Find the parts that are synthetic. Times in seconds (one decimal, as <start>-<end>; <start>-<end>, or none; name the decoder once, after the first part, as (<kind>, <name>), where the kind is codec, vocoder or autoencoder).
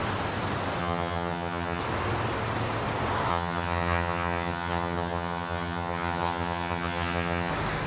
0.8-1.8 (vocoder, HiFi-GAN); 3.3-7.5